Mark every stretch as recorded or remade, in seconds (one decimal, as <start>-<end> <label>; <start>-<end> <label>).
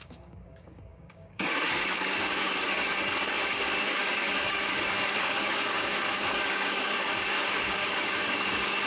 0.0-8.9 remade